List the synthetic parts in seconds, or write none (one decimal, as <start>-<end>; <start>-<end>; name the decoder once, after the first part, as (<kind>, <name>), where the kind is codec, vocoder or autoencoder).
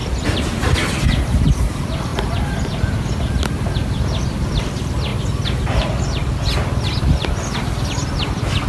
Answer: 0.0-1.5 (vocoder, BigVGAN v2)